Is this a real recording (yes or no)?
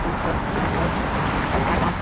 yes